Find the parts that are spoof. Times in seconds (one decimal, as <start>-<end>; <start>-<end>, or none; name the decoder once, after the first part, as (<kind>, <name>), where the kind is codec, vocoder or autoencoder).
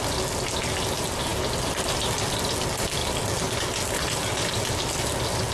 none